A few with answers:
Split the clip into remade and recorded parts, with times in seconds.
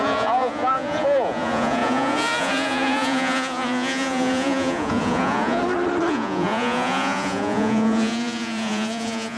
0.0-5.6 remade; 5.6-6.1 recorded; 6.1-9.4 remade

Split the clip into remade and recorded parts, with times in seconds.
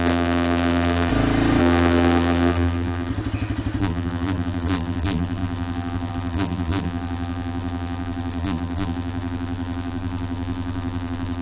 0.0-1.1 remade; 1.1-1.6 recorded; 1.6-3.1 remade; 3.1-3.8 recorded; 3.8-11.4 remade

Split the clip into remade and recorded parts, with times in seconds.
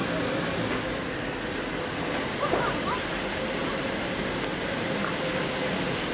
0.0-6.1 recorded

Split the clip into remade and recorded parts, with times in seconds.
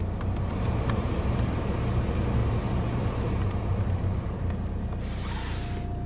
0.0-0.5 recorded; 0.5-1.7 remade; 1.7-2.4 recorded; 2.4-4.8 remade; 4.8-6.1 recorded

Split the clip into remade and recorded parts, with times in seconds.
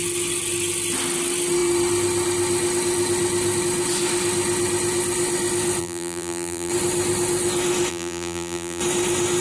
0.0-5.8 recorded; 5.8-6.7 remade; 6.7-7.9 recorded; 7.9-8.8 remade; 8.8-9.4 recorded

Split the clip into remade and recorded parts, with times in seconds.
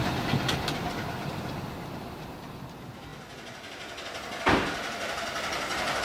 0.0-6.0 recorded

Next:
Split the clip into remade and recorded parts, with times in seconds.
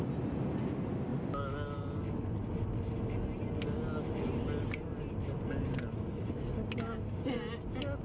0.0-8.0 recorded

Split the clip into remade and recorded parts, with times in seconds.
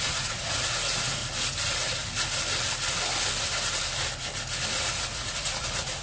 0.0-1.2 remade; 1.2-4.8 recorded; 4.8-6.0 remade